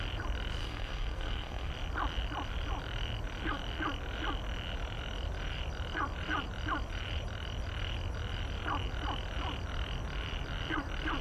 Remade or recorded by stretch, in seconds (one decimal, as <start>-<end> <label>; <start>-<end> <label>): 0.0-0.6 recorded; 0.6-1.7 remade; 1.7-11.2 recorded